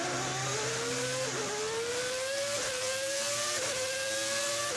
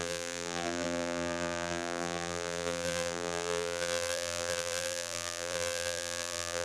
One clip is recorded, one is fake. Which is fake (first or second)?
second